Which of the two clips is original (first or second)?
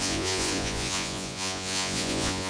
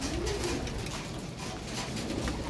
second